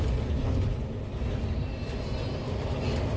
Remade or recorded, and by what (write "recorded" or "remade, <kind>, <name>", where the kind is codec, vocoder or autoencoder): recorded